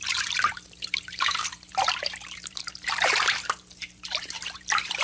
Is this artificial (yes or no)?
yes